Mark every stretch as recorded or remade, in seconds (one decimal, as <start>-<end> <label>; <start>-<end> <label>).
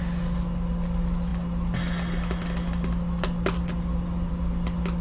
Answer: 0.0-5.0 recorded